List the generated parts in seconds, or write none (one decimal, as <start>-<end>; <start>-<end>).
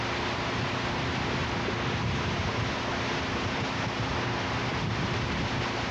4.7-5.4